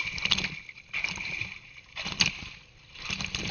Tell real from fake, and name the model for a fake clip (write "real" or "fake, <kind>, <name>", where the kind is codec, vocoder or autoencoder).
real